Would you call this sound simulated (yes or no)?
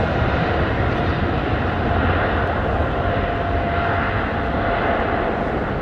no